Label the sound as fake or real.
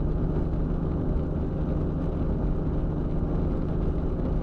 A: real